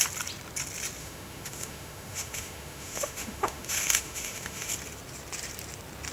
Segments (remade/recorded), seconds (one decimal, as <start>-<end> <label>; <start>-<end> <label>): 0.0-1.0 recorded; 1.0-4.7 remade; 4.7-6.1 recorded